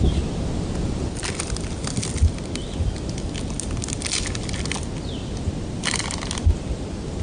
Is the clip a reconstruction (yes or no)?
no